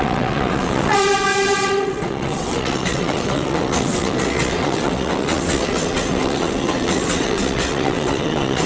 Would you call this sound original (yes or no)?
no